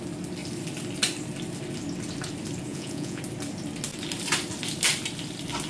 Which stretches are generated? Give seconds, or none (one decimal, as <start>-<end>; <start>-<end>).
2.7-3.2